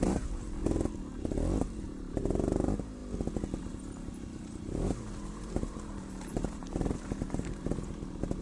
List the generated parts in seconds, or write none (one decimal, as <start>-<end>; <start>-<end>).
0.0-0.6; 1.6-3.0; 3.6-8.4

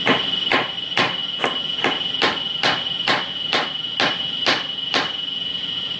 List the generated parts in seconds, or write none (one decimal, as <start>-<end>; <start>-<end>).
none